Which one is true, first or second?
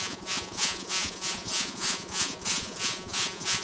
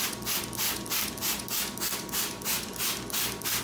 second